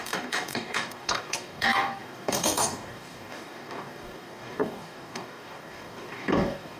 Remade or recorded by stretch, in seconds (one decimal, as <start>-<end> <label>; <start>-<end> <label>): 0.0-6.8 remade